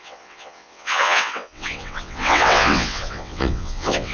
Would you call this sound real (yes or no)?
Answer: no